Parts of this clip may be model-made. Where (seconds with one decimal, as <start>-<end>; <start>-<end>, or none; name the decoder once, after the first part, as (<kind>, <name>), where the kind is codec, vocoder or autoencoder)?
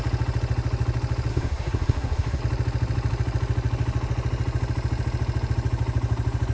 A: 1.3-2.4 (codec, SNAC)